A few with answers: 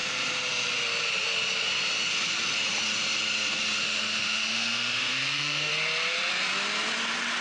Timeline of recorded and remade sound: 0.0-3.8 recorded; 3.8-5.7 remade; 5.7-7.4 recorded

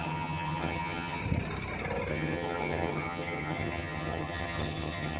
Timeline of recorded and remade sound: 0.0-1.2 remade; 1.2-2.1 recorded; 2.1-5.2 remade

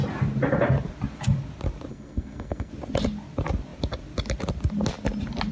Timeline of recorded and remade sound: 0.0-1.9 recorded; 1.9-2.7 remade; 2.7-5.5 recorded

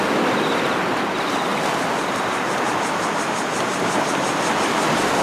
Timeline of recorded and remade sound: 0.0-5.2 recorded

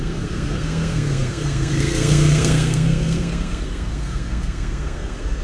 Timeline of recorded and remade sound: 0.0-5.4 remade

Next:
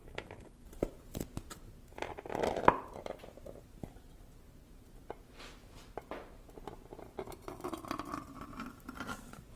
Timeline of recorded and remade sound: 0.0-9.6 recorded